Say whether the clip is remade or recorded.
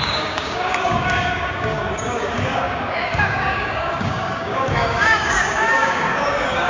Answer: remade